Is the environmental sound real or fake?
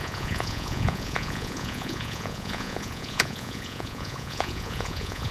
fake